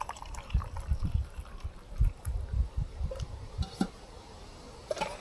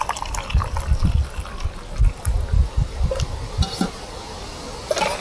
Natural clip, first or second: second